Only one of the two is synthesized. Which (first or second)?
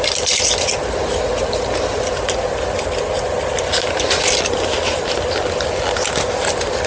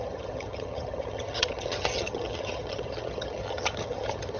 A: second